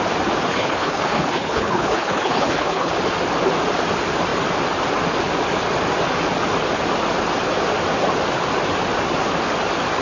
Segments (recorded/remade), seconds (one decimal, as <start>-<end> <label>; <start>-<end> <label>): 0.0-0.5 recorded; 0.5-2.9 remade; 2.9-10.0 recorded